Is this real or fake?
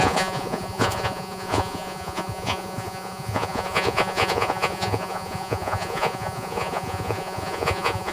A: fake